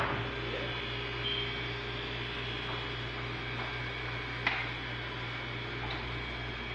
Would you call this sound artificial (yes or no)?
no